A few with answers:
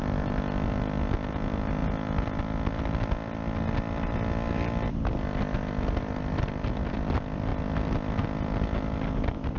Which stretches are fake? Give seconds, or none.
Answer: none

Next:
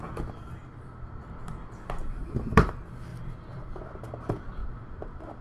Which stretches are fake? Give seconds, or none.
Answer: 0.6-1.2; 2.0-2.7; 3.1-3.8; 4.6-5.4

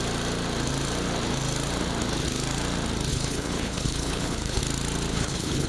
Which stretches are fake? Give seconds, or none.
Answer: 3.1-4.6; 5.1-5.7

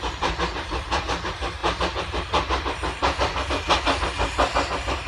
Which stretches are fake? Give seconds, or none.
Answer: 1.6-3.5

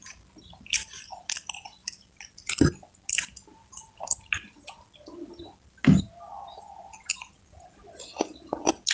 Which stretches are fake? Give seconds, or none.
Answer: none

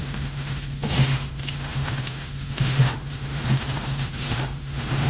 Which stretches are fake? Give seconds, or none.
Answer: 0.0-5.1